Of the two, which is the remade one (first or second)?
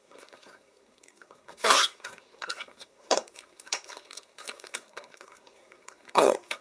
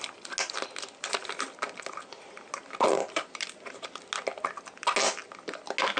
first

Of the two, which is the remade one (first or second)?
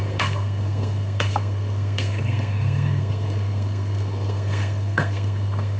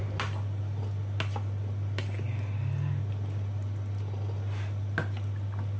first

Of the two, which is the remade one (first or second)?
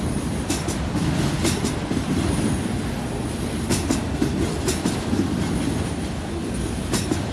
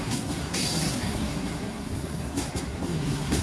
second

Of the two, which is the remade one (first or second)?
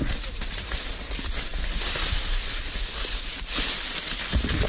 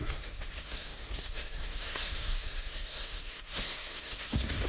second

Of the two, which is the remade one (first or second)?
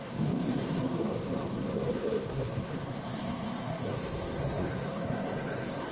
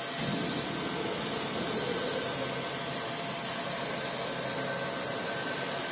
first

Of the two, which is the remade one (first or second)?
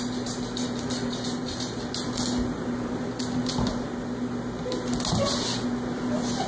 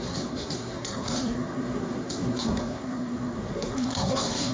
second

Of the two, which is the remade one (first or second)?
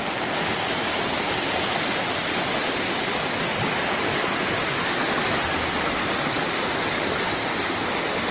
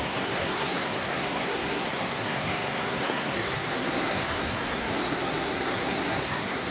second